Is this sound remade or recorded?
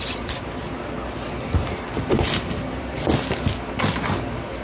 recorded